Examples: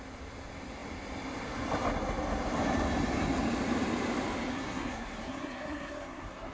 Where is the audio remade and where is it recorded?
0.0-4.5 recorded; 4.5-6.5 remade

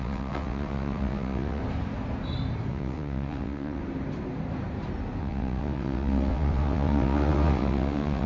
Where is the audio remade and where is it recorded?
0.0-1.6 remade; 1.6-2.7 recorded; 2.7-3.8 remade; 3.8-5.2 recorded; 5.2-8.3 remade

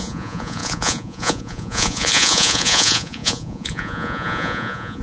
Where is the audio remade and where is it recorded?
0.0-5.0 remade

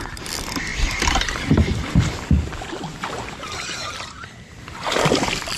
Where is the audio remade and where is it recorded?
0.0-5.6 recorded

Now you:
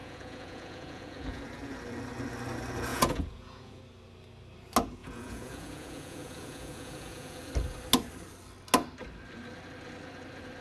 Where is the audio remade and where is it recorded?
0.0-1.4 remade; 1.4-2.9 recorded; 2.9-3.8 remade; 3.8-5.0 recorded; 5.0-7.5 remade; 7.5-10.6 recorded

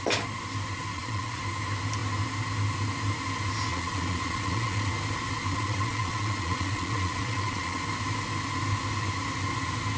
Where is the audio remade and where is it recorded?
0.0-0.9 recorded; 0.9-1.4 remade; 1.4-3.7 recorded; 3.7-4.9 remade; 4.9-5.5 recorded; 5.5-7.8 remade; 7.8-10.0 recorded

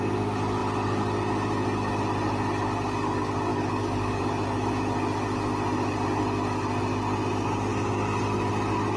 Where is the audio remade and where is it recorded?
0.0-3.5 recorded; 3.5-4.2 remade; 4.2-9.0 recorded

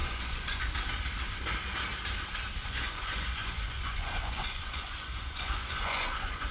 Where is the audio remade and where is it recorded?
0.0-0.6 remade; 0.6-2.6 recorded; 2.6-6.5 remade